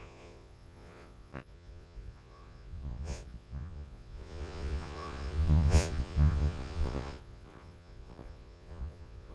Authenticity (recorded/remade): remade